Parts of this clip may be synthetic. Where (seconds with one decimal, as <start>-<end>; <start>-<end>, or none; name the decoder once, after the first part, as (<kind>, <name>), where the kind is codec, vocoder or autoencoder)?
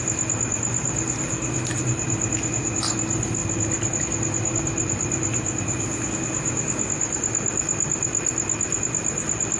none